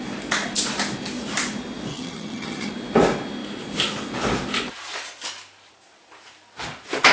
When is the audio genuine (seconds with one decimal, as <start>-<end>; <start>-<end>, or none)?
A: 0.0-1.9; 2.7-7.1